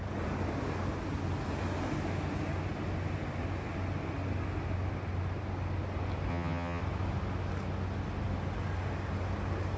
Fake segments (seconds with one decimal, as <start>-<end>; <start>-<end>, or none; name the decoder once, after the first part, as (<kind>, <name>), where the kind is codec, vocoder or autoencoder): 6.3-6.8 (vocoder, HiFi-GAN)